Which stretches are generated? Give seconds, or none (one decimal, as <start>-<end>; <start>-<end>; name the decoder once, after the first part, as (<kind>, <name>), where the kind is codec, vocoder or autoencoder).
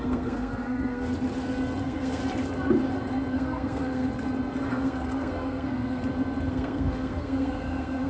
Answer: 0.0-1.1 (codec, SNAC); 1.8-2.2; 3.3-4.1; 4.7-6.0; 6.5-8.1